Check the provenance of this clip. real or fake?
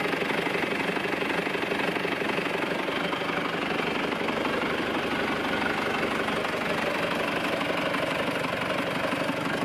real